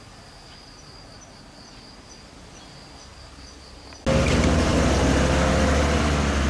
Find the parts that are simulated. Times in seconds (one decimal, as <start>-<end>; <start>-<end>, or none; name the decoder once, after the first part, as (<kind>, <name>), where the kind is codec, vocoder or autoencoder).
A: none